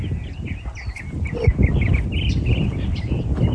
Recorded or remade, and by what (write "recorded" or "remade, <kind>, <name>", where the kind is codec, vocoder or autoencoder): remade, vocoder, BigVGAN v2